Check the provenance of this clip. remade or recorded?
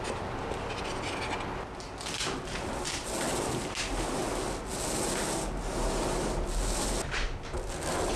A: recorded